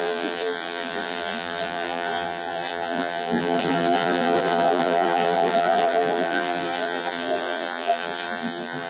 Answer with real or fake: fake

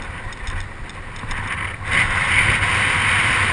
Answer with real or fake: real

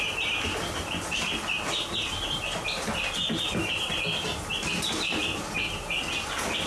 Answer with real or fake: real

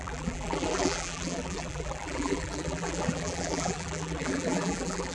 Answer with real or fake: fake